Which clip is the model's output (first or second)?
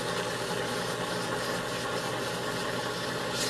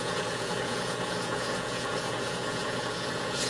second